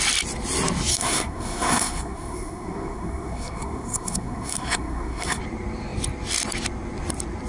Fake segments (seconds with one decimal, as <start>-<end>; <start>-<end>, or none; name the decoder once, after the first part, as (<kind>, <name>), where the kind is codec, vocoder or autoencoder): 0.9-5.4 (codec, SNAC)